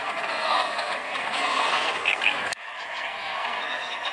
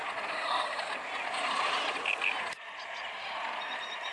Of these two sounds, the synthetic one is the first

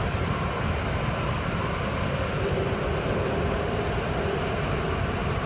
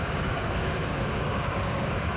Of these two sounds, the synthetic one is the second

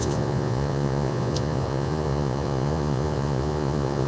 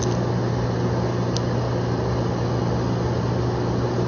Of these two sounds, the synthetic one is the first